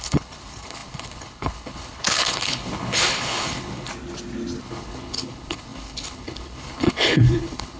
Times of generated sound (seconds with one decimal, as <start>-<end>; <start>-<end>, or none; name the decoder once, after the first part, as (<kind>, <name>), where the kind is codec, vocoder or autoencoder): 0.0-3.9 (codec, HILCodec); 4.6-7.8